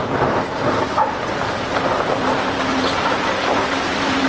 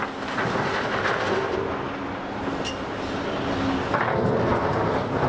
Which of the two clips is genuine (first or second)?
second